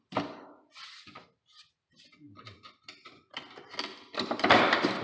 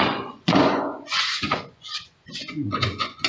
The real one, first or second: first